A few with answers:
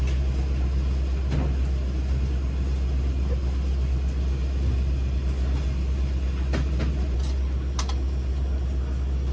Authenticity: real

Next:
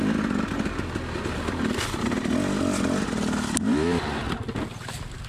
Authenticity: real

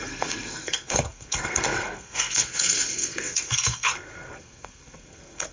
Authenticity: fake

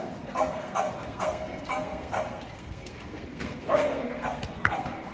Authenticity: fake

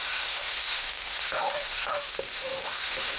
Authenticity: fake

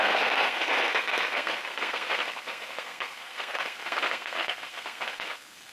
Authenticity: fake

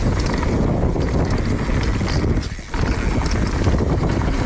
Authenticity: real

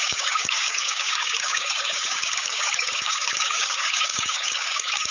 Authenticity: fake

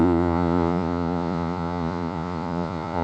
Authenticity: fake